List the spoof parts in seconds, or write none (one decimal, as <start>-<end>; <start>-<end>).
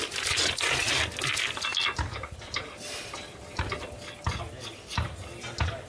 1.7-3.0